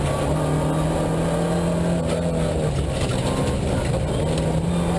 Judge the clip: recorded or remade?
recorded